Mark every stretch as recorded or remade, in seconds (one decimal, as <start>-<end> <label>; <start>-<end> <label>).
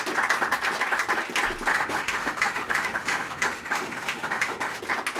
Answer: 0.0-1.7 recorded; 1.7-4.8 remade; 4.8-5.2 recorded